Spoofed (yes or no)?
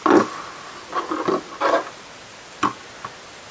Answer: no